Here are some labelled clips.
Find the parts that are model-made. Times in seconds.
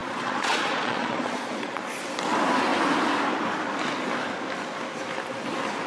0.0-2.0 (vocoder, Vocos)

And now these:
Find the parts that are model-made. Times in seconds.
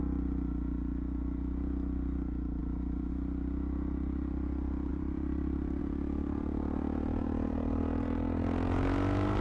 2.6-3.1 (vocoder, BigVGAN v2); 4.9-5.8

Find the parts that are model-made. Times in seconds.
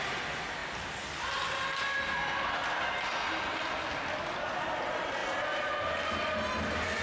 none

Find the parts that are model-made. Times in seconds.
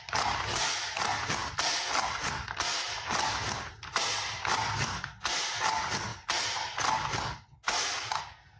none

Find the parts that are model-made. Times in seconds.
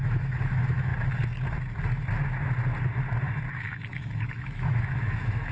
0.0-0.9 (autoencoder, DAC-VAE); 3.5-5.5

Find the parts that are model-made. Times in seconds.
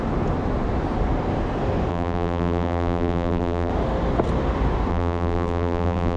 1.9-3.7 (vocoder, BigVGAN v2); 4.9-6.2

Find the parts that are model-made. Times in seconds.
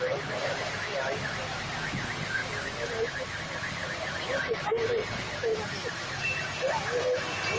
2.4-3.4 (vocoder, BigVGAN v2); 3.8-4.6; 5.5-6.6